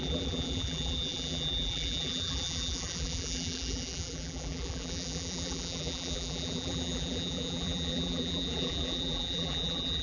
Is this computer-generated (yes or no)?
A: yes